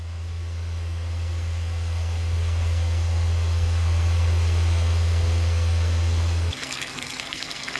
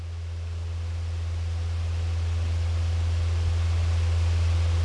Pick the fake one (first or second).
first